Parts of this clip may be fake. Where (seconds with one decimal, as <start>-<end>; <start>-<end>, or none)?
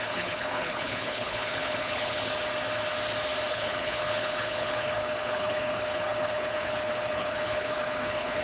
0.0-2.3; 3.5-8.4